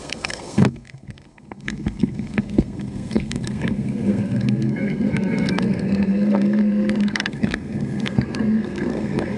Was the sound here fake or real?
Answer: fake